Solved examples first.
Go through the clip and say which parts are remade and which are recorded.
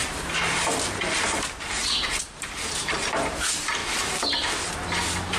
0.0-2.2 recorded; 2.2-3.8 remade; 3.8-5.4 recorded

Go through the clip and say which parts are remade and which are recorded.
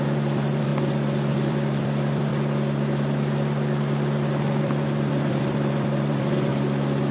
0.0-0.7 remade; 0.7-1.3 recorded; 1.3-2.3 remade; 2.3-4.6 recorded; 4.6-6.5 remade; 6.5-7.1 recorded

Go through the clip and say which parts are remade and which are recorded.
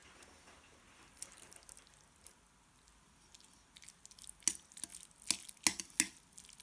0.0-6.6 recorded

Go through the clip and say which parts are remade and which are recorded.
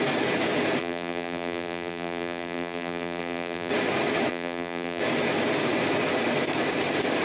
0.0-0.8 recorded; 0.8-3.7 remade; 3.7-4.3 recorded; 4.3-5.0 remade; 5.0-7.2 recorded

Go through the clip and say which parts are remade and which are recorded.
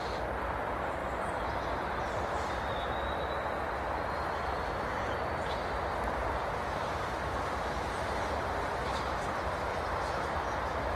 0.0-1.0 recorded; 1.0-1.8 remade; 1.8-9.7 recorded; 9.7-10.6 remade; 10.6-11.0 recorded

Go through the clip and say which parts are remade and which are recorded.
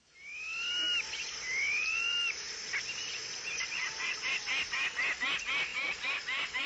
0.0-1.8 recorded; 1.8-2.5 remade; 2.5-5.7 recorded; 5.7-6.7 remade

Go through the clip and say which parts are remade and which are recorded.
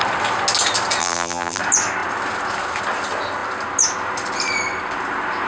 0.0-1.0 recorded; 1.0-1.6 remade; 1.6-5.5 recorded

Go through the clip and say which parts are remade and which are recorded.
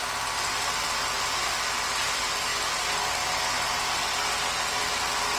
0.0-0.8 recorded; 0.8-2.5 remade; 2.5-4.7 recorded; 4.7-5.4 remade